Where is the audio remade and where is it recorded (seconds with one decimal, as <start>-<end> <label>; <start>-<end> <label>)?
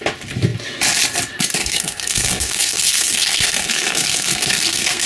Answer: 0.0-1.6 recorded; 1.6-5.1 remade